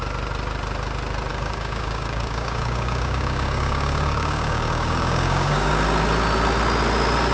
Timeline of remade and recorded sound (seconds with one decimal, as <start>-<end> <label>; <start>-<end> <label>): 0.0-1.3 recorded; 1.3-5.7 remade; 5.7-7.3 recorded